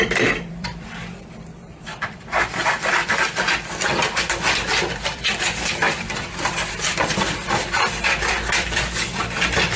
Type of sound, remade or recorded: remade